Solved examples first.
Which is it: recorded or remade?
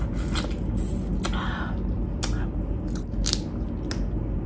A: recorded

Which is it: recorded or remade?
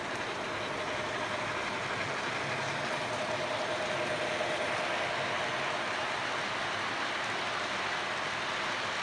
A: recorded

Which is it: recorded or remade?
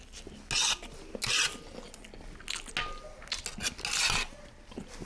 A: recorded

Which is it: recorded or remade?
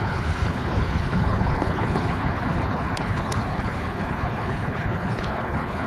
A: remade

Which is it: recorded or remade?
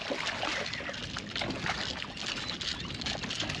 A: recorded